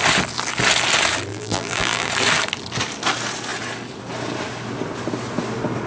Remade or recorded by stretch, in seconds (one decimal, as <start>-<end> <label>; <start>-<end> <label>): 0.0-1.3 recorded; 1.3-2.1 remade; 2.1-5.9 recorded